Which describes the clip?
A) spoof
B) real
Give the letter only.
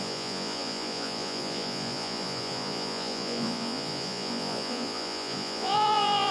A